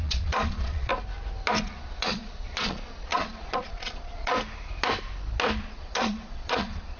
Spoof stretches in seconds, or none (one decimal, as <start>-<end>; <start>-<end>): 0.0-0.9; 1.6-4.3; 5.6-7.0